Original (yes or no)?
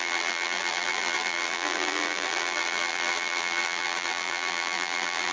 no